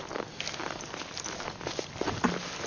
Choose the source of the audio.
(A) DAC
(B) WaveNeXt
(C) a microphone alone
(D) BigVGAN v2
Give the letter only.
C